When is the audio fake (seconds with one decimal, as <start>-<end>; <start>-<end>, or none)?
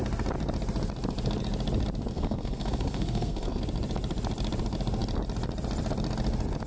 2.1-3.6